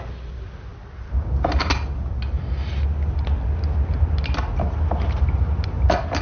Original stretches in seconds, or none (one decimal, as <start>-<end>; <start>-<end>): 0.0-6.2